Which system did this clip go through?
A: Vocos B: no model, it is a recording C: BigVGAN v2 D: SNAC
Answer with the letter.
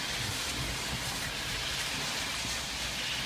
B